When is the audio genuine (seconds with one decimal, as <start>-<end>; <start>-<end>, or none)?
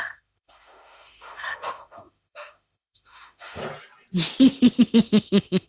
3.6-4.8